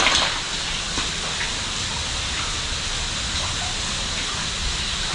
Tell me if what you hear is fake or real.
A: real